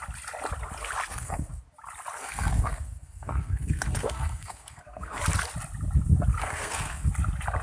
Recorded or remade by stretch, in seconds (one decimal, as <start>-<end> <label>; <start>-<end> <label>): 0.0-1.1 recorded; 1.1-1.6 remade; 1.6-2.2 recorded; 2.2-5.2 remade; 5.2-6.4 recorded; 6.4-7.1 remade; 7.1-7.6 recorded